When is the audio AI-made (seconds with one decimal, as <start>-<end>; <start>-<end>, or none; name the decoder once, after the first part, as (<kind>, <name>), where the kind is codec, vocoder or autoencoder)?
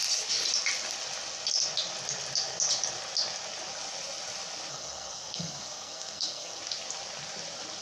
4.7-6.6 (codec, SNAC)